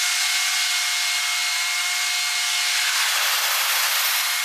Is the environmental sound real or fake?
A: real